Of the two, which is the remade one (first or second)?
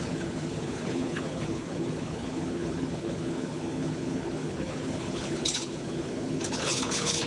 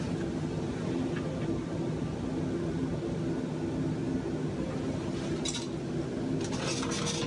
first